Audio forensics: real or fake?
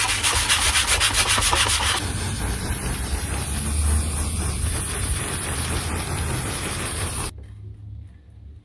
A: real